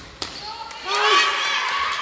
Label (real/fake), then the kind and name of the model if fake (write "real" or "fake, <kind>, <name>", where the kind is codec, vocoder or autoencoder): real